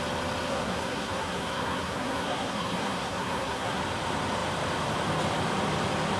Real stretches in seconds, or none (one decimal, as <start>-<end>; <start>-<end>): 0.0-0.5; 3.8-6.2